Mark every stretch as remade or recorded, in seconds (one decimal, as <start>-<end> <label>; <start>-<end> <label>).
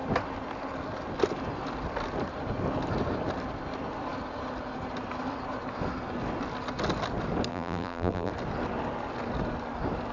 0.0-7.5 recorded; 7.5-8.3 remade; 8.3-10.1 recorded